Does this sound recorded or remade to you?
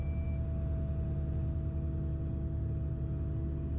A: recorded